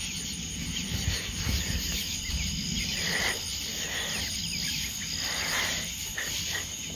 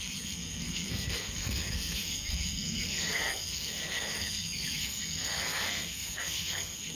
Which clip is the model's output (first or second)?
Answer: second